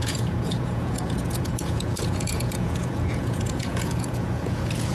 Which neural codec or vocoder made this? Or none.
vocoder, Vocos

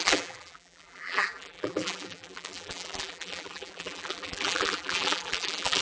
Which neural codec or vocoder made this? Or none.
vocoder, BigVGAN v2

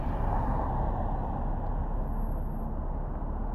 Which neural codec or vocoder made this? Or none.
none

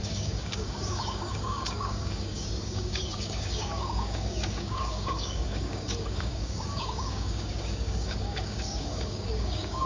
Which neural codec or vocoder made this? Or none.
codec, DAC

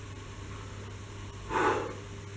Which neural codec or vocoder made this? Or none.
none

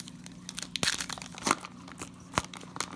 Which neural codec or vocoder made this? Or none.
none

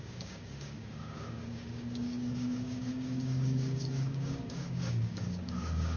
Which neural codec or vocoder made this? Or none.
codec, DAC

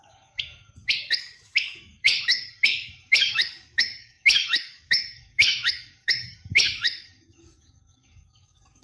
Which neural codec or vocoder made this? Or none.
codec, DAC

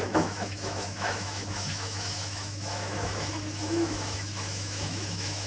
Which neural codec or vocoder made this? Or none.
autoencoder, DAC-VAE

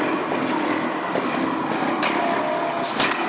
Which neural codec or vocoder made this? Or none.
none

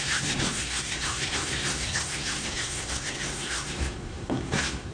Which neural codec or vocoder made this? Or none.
codec, SNAC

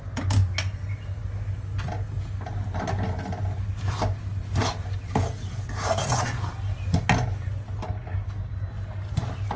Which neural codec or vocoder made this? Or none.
none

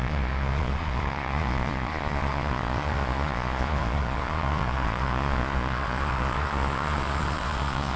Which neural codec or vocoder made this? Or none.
vocoder, Vocos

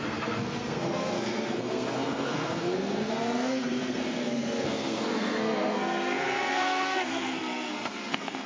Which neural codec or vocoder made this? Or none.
codec, SNAC